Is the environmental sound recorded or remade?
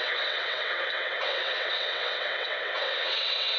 remade